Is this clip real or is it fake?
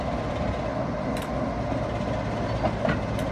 real